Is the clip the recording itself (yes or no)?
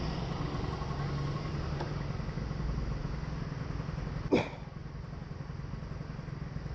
yes